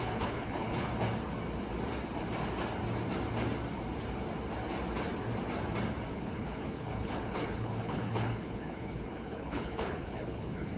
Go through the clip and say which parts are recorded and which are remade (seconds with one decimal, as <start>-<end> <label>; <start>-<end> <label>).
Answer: 0.0-0.9 remade; 0.9-6.1 recorded; 6.1-10.8 remade